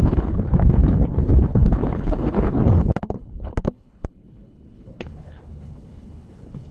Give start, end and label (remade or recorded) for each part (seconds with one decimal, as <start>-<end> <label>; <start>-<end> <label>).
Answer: 0.0-6.7 remade